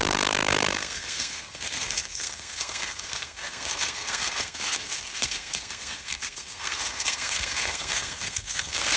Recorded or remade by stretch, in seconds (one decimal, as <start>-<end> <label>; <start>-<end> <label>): 0.0-9.0 remade